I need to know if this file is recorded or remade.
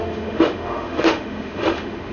remade